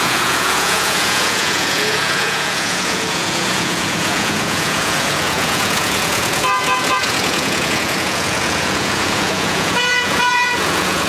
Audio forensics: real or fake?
fake